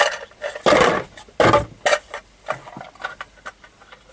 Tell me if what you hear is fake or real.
real